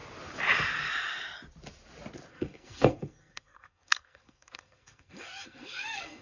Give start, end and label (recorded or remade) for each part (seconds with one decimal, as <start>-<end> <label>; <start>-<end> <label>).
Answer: 0.0-2.3 recorded; 2.3-6.2 remade